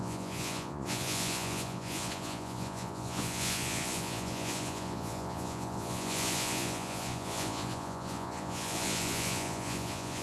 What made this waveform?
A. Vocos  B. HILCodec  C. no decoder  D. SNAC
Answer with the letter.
A